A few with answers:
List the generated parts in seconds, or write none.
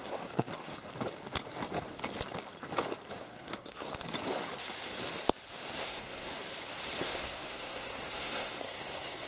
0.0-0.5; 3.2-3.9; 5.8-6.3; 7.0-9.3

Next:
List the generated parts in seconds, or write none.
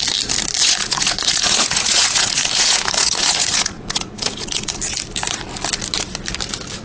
0.6-4.7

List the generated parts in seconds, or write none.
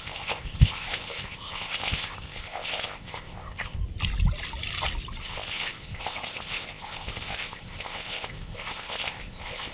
0.0-3.8; 5.2-9.7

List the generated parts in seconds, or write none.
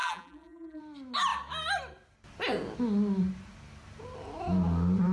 0.0-0.8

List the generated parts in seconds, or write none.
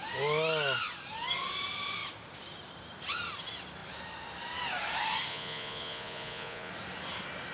5.3-6.7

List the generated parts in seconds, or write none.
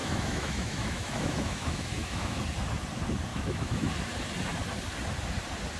0.0-2.4; 3.3-3.9